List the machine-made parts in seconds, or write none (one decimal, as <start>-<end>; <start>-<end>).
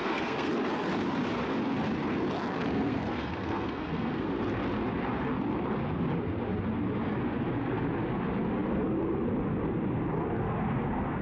0.0-0.5; 2.5-4.4